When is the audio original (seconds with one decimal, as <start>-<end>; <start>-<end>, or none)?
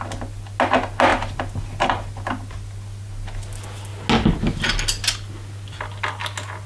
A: 0.0-6.7